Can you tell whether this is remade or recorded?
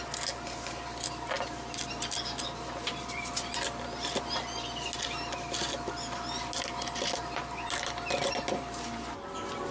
recorded